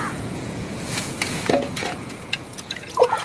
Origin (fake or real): fake